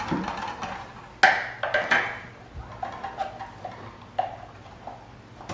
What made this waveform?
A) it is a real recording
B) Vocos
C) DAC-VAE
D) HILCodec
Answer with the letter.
A